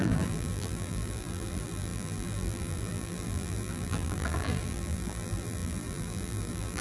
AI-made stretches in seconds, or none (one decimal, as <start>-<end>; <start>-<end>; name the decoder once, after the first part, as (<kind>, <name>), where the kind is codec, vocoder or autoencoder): 0.0-6.8 (vocoder, BigVGAN v2)